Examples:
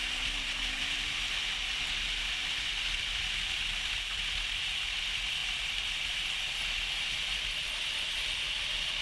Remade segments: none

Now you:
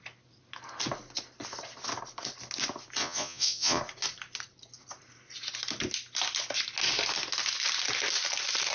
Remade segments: 3.0-3.8 (vocoder, Vocos)

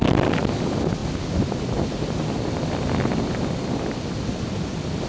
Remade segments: none

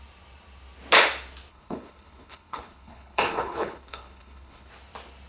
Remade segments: 1.5-4.7 (codec, HILCodec)

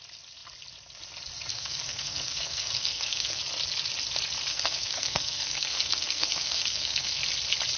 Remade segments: 1.5-3.4 (codec, SNAC); 4.5-7.2

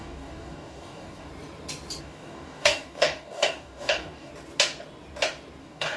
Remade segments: 0.0-1.3 (codec, DAC); 2.0-4.3; 5.6-6.0